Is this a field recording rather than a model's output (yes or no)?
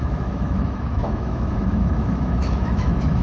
no